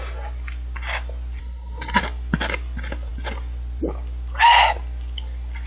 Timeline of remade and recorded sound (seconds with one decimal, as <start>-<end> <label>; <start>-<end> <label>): 0.0-1.4 recorded; 1.4-2.0 remade; 2.0-5.7 recorded